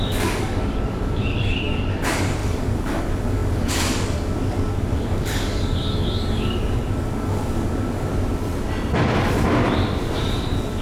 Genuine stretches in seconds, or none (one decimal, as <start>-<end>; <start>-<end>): 8.1-10.2